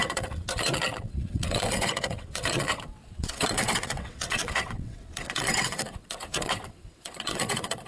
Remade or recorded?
remade